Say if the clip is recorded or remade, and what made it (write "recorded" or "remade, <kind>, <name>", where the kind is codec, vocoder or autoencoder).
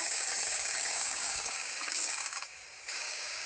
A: remade, codec, DAC